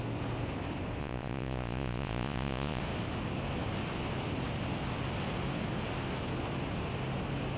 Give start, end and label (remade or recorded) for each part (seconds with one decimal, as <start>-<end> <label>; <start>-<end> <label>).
0.0-1.0 recorded; 1.0-2.8 remade; 2.8-7.6 recorded